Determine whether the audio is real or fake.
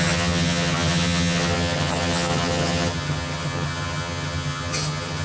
fake